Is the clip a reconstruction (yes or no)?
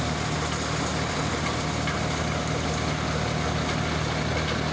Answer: no